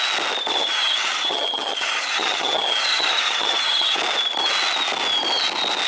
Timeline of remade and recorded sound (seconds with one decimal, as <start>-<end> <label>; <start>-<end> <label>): 0.0-0.5 recorded; 0.5-4.0 remade; 4.0-5.9 recorded